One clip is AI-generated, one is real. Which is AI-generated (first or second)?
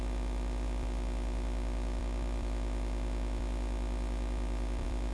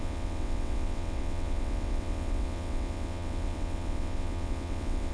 second